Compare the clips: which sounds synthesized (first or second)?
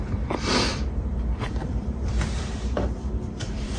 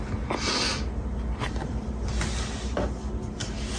first